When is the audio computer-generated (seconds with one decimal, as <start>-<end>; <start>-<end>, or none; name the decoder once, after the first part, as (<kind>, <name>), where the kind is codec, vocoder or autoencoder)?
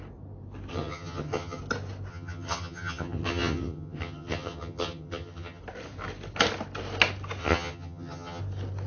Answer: 0.7-1.6 (vocoder, HiFi-GAN); 2.1-5.6; 7.4-8.4